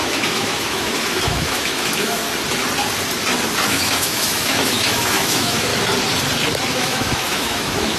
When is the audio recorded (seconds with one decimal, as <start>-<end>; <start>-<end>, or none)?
2.2-3.7; 5.7-6.7